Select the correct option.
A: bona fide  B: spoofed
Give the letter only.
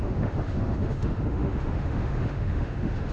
B